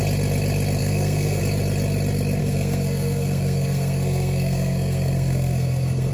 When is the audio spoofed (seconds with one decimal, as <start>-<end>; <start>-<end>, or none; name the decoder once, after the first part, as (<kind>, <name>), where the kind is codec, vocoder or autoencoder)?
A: 0.8-1.4 (codec, SNAC); 2.4-6.1